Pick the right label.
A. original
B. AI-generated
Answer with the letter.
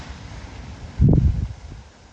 B